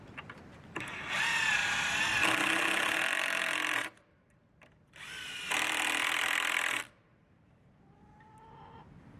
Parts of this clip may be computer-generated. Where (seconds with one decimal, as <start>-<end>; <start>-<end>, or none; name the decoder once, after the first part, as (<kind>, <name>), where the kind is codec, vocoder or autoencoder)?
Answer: none